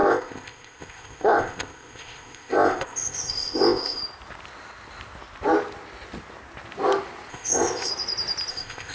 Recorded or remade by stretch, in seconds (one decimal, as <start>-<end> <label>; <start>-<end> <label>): 0.0-4.0 remade; 4.0-7.3 recorded; 7.3-7.9 remade; 7.9-8.5 recorded; 8.5-8.9 remade